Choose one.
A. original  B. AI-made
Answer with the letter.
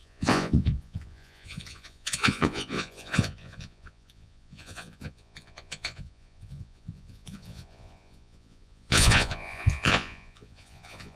B